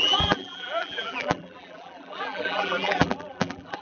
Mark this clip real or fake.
fake